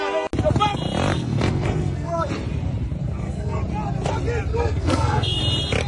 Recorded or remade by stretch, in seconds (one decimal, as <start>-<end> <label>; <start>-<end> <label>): 0.0-1.1 recorded; 1.1-2.3 remade; 2.3-3.0 recorded; 3.0-3.6 remade; 3.6-4.5 recorded; 4.5-5.4 remade; 5.4-5.9 recorded